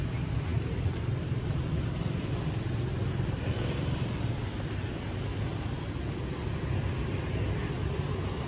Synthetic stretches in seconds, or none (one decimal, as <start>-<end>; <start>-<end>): 0.5-4.9